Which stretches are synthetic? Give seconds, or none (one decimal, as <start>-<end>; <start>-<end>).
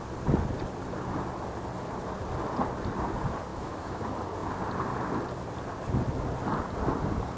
3.5-4.0